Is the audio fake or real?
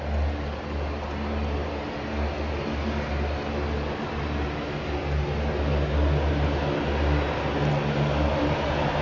real